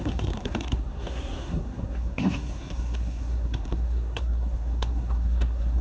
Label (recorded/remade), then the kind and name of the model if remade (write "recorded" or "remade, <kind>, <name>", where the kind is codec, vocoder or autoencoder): remade, codec, SNAC